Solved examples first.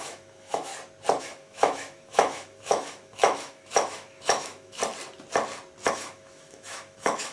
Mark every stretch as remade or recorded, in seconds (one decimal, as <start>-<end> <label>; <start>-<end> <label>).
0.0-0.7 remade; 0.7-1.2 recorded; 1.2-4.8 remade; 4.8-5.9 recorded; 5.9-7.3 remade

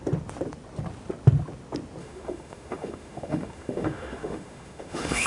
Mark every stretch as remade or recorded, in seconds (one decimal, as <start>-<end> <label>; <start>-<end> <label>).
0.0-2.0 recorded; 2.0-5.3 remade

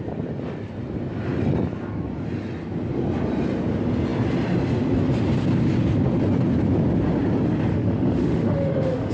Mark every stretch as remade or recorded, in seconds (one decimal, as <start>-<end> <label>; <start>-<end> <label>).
0.0-7.7 recorded; 7.7-9.1 remade

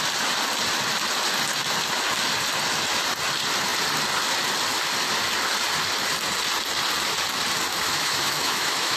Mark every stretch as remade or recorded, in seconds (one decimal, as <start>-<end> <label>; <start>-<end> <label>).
0.0-7.7 recorded; 7.7-9.0 remade